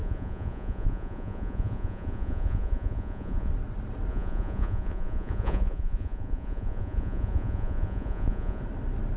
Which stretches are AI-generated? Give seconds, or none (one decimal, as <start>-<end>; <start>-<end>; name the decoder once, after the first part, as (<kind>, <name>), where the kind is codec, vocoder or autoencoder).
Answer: 0.0-3.5 (vocoder, Vocos); 4.1-8.6